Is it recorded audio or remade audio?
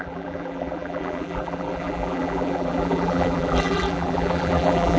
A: remade